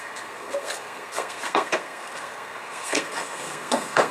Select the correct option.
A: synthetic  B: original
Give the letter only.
A